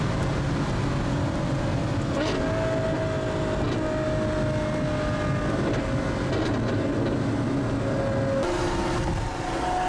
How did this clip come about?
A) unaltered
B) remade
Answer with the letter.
A